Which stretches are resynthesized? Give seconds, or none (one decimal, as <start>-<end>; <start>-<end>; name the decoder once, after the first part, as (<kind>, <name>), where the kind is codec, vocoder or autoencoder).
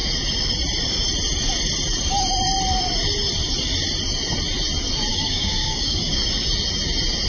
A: 5.1-6.2 (codec, DAC)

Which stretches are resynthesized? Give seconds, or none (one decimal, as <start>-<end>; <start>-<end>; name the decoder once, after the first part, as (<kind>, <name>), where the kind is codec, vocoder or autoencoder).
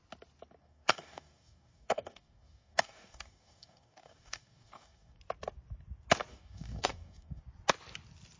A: 0.6-5.2 (codec, DAC); 6.3-7.4